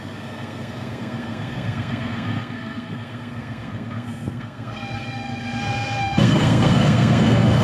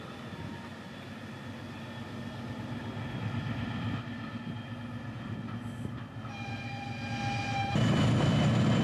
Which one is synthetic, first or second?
first